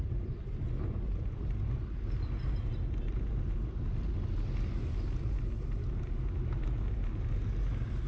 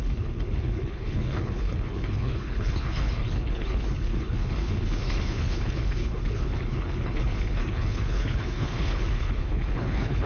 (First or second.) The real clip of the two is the first